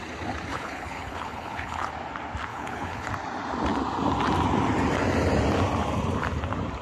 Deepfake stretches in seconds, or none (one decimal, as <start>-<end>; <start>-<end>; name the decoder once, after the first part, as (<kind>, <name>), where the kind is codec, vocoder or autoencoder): 0.5-1.9 (codec, HILCodec); 2.5-3.1